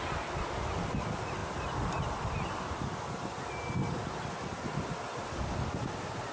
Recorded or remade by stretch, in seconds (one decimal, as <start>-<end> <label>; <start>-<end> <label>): 0.0-6.3 recorded